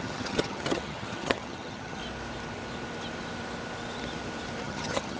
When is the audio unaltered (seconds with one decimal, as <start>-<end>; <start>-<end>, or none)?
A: 2.0-4.6